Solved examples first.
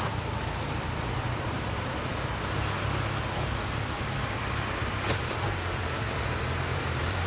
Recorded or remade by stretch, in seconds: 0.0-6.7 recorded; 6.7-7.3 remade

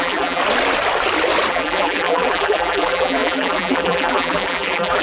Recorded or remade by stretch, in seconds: 0.0-0.4 remade; 0.4-1.5 recorded; 1.5-5.0 remade

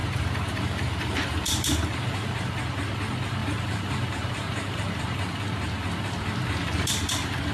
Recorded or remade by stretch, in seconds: 0.0-2.6 remade; 2.6-3.4 recorded; 3.4-5.0 remade; 5.0-7.5 recorded

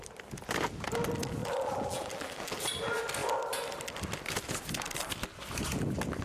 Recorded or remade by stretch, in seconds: 0.0-1.4 recorded; 1.4-2.6 remade; 2.6-6.2 recorded